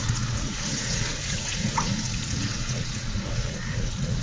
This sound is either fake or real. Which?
fake